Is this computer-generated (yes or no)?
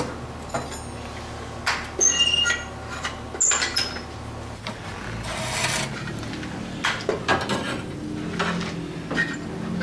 no